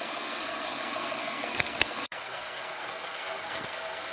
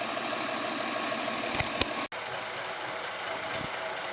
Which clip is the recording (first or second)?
second